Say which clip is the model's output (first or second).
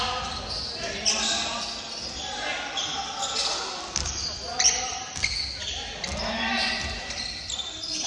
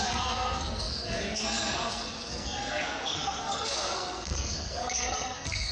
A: second